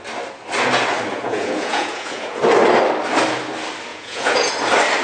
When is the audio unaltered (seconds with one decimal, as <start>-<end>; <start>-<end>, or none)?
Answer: 0.0-1.1; 2.4-3.9; 4.5-5.0